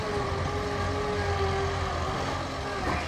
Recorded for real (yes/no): yes